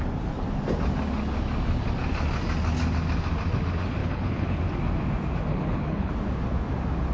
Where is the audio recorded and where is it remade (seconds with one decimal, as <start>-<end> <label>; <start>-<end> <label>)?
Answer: 0.0-4.0 recorded; 4.0-4.6 remade; 4.6-5.5 recorded; 5.5-6.1 remade; 6.1-7.1 recorded